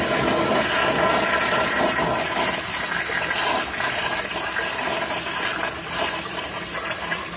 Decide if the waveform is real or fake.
real